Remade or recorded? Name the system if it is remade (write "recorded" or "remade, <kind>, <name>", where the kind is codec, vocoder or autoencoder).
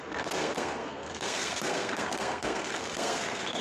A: remade, codec, SNAC